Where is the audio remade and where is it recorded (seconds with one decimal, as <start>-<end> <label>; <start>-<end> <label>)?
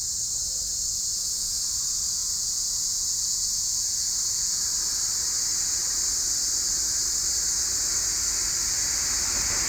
0.0-0.9 recorded; 0.9-1.6 remade; 1.6-2.2 recorded; 2.2-4.6 remade; 4.6-9.7 recorded